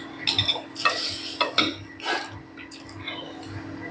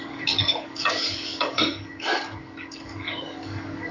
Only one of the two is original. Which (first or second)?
first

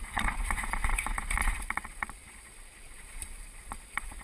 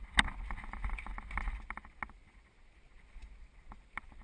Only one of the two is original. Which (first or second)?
second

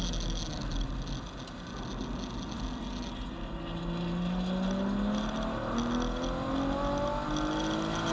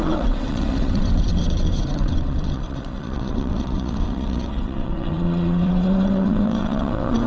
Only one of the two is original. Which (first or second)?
first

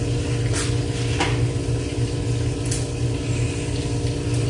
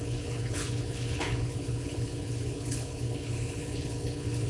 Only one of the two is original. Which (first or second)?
first